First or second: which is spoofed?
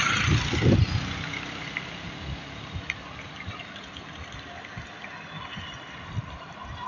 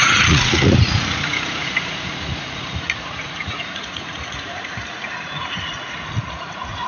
second